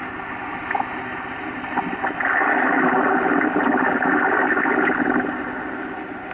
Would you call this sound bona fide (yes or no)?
yes